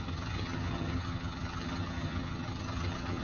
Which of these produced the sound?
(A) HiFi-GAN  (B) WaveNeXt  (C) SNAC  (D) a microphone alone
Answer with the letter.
A